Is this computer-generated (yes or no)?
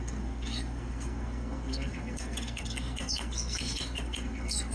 yes